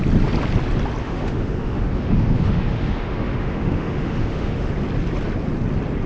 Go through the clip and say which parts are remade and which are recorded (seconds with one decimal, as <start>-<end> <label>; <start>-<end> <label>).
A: 0.0-1.0 recorded; 1.0-4.7 remade; 4.7-6.1 recorded